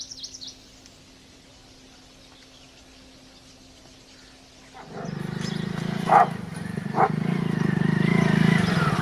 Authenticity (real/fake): real